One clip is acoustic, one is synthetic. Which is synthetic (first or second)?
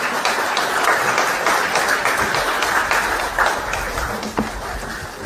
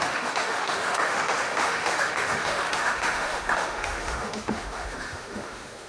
second